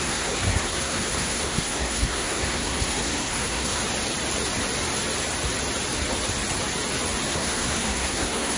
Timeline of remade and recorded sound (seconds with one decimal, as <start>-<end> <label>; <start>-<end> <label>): 0.0-3.8 remade; 3.8-7.3 recorded; 7.3-8.6 remade